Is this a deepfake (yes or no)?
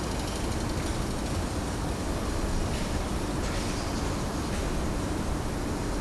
no